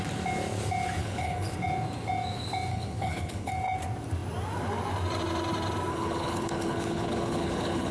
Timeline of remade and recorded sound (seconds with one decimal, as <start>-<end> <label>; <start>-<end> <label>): 0.0-1.0 recorded; 1.0-1.5 remade; 1.5-2.7 recorded; 2.7-3.5 remade; 3.5-5.9 recorded; 5.9-7.9 remade